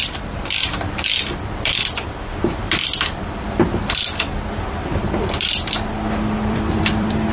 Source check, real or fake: fake